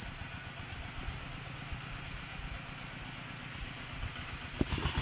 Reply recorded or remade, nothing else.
recorded